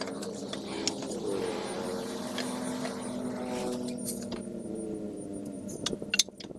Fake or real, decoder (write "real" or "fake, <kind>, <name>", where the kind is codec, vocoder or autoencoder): real